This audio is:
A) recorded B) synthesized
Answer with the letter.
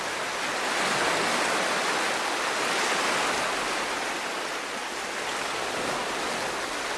A